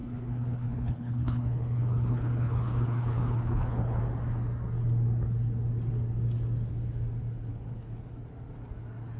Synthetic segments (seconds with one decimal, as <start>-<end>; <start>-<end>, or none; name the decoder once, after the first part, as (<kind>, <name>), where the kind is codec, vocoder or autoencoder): 0.0-4.0 (codec, HILCodec); 7.5-8.1